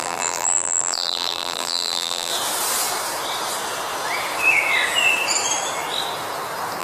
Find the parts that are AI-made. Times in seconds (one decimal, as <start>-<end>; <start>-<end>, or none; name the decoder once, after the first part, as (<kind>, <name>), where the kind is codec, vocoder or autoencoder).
0.0-2.3 (vocoder, BigVGAN v2)